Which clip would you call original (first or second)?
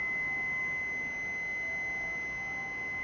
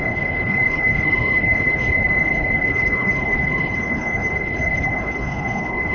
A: first